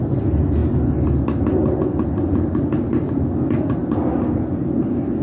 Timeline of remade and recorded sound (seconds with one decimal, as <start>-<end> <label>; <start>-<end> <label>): 0.0-5.2 recorded